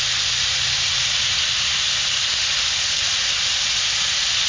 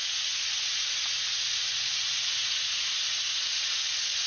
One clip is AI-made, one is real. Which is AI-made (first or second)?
second